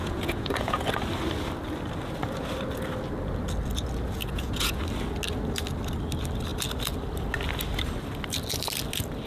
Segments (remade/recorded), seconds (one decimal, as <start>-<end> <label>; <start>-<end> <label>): 0.0-0.8 remade; 0.8-4.2 recorded; 4.2-4.8 remade; 4.8-9.3 recorded